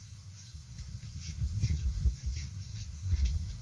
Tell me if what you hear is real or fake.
fake